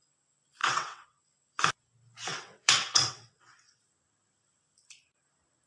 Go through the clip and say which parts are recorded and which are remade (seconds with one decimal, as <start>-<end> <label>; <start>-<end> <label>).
0.0-0.6 recorded; 0.6-1.2 remade; 1.2-2.3 recorded; 2.3-3.8 remade; 3.8-5.7 recorded